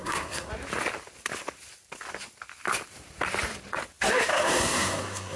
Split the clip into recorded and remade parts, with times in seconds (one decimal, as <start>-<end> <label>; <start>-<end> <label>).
0.0-0.5 remade; 0.5-4.3 recorded; 4.3-5.4 remade

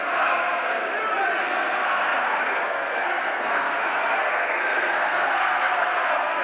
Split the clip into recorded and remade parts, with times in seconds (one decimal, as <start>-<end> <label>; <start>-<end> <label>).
0.0-0.9 remade; 0.9-1.4 recorded; 1.4-6.4 remade

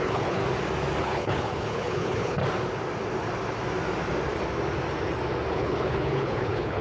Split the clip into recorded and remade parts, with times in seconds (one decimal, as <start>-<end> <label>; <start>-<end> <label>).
0.0-0.4 remade; 0.4-1.0 recorded; 1.0-2.4 remade; 2.4-5.5 recorded; 5.5-6.8 remade

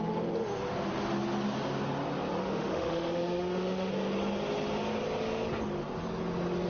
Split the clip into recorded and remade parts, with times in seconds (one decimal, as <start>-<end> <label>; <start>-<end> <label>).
0.0-2.4 recorded; 2.4-3.9 remade; 3.9-6.7 recorded

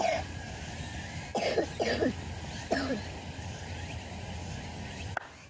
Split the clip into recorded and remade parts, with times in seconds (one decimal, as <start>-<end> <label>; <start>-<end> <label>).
0.0-5.5 recorded